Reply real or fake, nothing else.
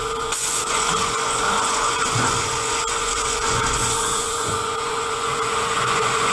fake